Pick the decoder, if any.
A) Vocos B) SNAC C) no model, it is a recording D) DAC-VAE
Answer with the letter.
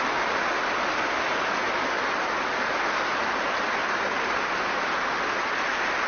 C